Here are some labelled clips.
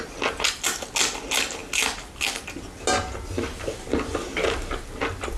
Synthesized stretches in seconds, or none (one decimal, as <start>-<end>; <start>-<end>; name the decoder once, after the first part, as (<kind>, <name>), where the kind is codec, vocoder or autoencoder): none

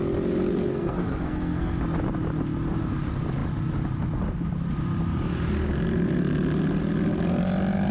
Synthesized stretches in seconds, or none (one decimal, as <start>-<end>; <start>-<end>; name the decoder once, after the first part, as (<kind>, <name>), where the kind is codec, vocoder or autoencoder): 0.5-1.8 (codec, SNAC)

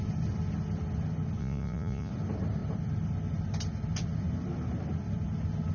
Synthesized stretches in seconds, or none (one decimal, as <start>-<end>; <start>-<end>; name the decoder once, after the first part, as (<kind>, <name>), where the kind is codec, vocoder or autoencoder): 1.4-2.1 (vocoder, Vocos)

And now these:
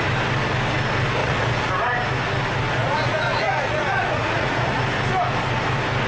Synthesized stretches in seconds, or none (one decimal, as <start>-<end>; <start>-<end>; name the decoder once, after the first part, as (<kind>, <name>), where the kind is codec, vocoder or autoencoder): 1.2-1.7 (vocoder, Vocos); 2.8-4.8